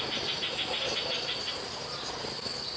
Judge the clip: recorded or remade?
recorded